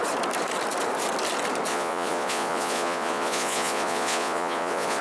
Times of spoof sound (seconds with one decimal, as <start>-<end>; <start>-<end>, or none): 1.7-5.0